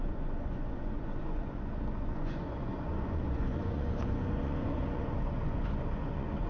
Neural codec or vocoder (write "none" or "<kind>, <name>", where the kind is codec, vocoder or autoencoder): vocoder, Vocos